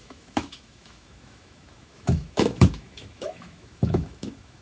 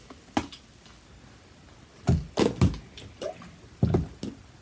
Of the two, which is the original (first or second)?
second